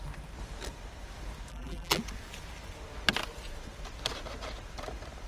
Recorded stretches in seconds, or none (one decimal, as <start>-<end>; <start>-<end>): 0.0-1.5; 2.0-5.3